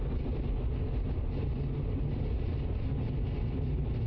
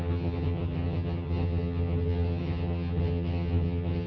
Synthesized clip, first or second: second